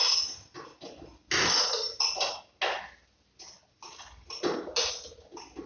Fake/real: real